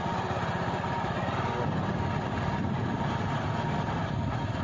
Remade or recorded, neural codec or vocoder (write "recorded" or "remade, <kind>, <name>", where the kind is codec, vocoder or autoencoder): recorded